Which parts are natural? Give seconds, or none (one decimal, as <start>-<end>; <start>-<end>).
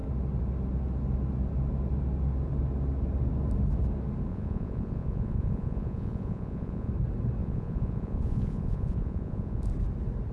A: 0.0-4.3; 6.9-7.4; 9.7-10.3